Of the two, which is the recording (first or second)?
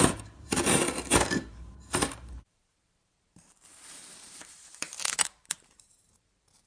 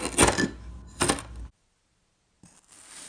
second